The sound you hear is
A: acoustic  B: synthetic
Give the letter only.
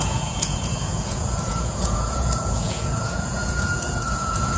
B